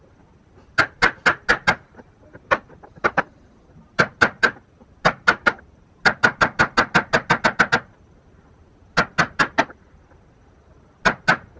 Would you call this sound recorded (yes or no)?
yes